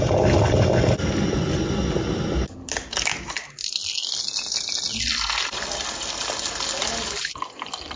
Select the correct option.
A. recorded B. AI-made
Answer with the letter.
A